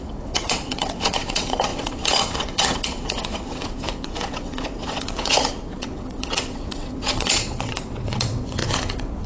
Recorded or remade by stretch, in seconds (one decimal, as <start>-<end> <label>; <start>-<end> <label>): 0.0-9.3 remade